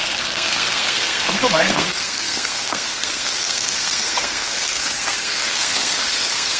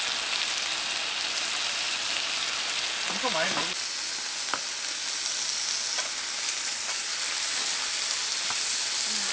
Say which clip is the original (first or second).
second